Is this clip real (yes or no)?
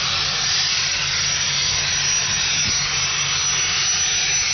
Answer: yes